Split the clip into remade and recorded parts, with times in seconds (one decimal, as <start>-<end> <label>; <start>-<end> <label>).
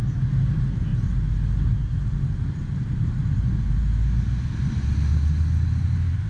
0.0-6.3 recorded